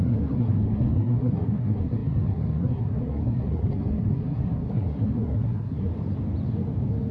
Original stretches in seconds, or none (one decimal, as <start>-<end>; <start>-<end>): 5.9-7.1